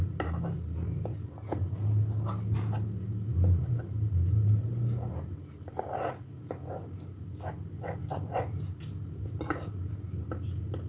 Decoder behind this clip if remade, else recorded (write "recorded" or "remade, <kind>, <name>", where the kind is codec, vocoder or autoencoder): recorded